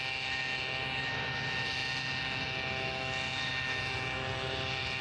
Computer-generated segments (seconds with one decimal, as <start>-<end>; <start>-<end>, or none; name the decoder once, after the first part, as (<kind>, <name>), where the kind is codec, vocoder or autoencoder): none